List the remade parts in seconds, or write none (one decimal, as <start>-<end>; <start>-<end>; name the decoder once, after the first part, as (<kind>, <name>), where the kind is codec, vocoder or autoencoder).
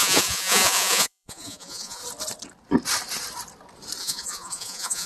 0.0-2.0 (vocoder, Vocos); 4.0-5.1